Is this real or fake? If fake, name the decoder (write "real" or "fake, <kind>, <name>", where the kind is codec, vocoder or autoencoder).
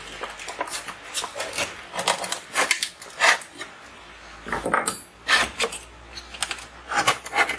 real